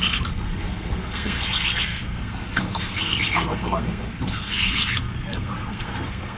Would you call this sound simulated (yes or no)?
yes